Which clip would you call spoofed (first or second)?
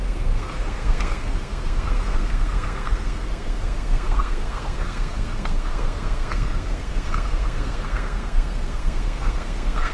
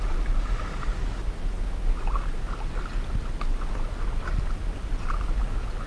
first